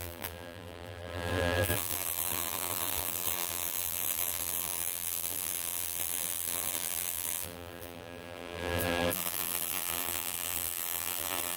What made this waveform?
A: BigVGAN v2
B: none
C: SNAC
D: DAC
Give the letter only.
A